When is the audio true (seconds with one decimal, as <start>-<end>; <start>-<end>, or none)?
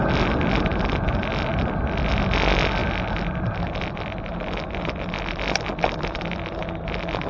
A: 0.0-1.5; 2.1-7.3